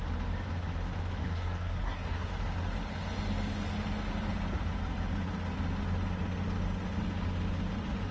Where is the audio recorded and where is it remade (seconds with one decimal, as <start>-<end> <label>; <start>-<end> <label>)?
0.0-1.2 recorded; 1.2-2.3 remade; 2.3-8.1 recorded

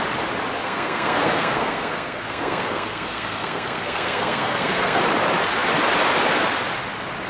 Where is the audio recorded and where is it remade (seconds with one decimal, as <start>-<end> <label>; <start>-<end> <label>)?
0.0-0.6 recorded; 0.6-5.0 remade; 5.0-7.3 recorded

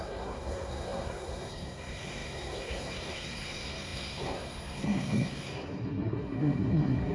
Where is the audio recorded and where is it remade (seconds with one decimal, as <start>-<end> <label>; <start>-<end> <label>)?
0.0-7.1 remade